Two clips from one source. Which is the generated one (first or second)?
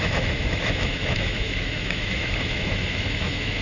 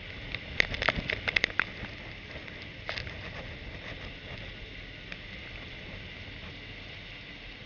first